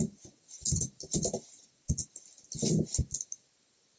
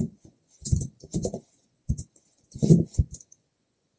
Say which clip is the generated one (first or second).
second